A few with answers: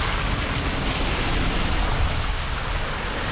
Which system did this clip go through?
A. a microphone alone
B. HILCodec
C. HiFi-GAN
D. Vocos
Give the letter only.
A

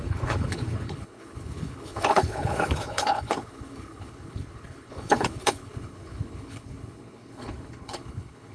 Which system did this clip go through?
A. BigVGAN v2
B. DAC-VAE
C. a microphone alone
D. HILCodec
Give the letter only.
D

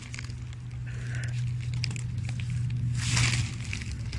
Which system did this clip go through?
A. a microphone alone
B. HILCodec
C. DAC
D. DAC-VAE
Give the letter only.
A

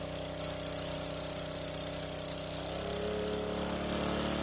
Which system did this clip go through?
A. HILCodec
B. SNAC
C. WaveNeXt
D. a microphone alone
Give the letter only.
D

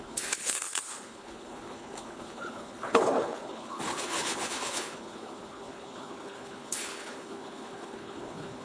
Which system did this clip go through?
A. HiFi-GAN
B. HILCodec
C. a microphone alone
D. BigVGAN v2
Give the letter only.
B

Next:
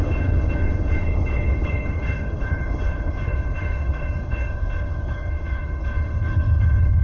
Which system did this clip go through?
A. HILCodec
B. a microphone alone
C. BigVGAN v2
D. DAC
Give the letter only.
A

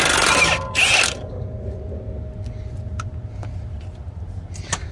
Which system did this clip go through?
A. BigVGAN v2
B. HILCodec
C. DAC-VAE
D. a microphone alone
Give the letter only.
D